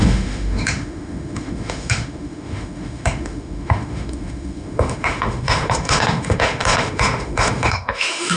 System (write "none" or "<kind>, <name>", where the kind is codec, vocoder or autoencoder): autoencoder, DAC-VAE